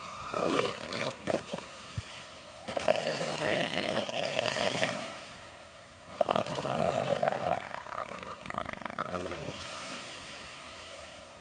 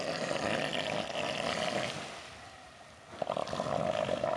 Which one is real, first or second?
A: second